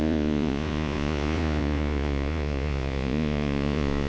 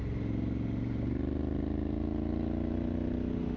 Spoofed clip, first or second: first